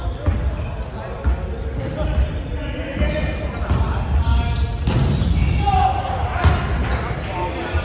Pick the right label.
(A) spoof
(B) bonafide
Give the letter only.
B